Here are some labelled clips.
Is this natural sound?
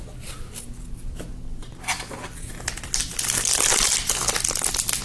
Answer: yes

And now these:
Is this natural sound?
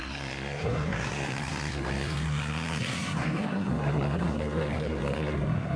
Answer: no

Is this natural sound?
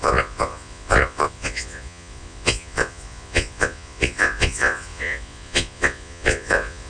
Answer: no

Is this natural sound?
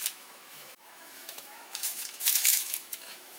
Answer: no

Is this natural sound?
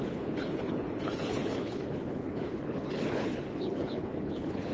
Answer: no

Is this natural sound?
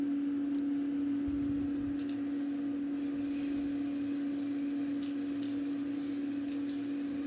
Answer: yes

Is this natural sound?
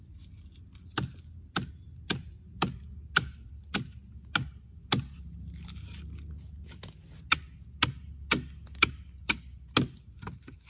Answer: yes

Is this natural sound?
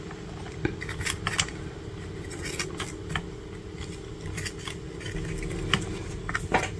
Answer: yes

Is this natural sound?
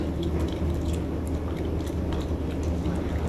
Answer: yes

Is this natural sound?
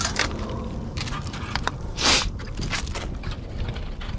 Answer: no